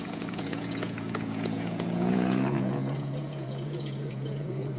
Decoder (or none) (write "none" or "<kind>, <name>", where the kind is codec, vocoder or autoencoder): vocoder, Vocos